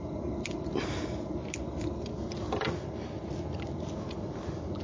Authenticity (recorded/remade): recorded